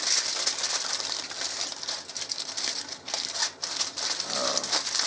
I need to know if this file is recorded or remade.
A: recorded